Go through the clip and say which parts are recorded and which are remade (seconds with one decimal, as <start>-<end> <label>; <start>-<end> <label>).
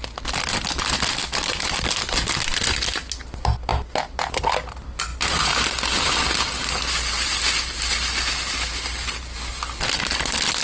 0.0-10.6 recorded